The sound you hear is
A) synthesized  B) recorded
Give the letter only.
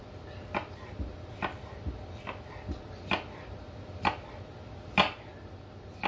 B